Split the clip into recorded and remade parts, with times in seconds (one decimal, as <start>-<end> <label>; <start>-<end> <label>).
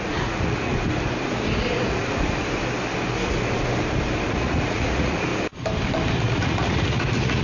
0.0-0.7 remade; 0.7-4.3 recorded; 4.3-5.3 remade; 5.3-6.2 recorded; 6.2-7.4 remade